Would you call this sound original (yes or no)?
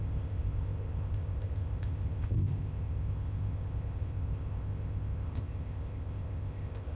no